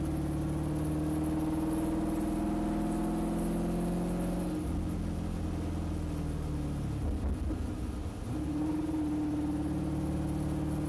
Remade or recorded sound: recorded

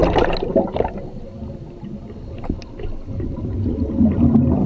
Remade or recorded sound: recorded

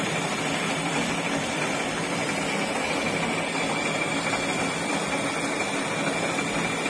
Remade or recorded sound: recorded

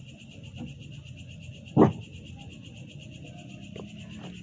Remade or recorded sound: recorded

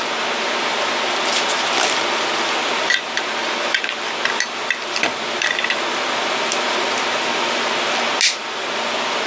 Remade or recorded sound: recorded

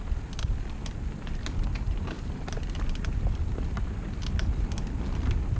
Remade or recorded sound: recorded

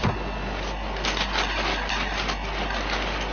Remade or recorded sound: recorded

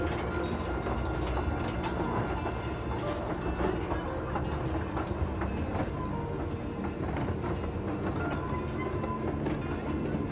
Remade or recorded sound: recorded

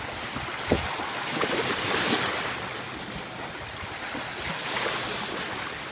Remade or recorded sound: recorded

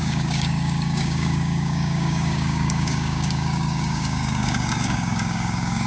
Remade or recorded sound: remade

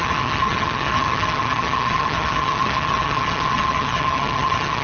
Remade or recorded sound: remade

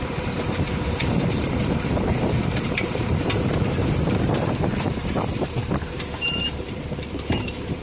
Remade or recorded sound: remade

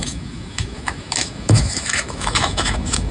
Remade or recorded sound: remade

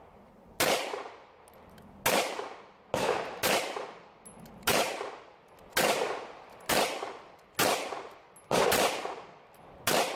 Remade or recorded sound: recorded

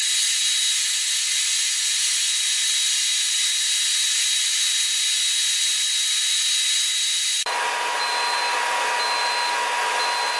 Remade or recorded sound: recorded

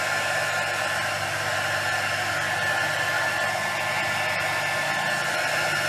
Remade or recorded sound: recorded